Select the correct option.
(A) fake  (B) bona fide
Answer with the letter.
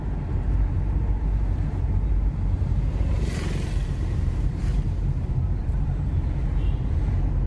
A